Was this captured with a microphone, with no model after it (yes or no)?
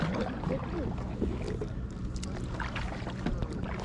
yes